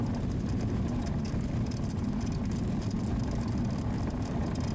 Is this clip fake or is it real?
real